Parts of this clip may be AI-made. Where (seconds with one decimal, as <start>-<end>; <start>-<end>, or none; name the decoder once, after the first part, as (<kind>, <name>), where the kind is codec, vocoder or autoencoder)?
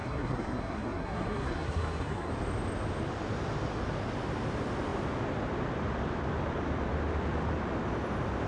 0.0-2.3 (codec, SNAC)